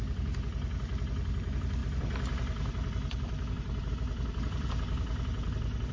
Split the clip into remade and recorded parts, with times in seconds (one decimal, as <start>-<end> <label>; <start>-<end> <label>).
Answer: 0.0-5.9 recorded